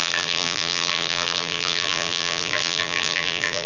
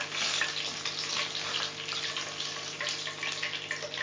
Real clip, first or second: second